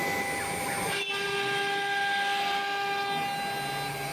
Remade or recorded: recorded